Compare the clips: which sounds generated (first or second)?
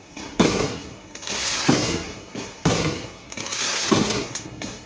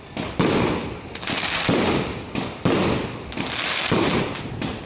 first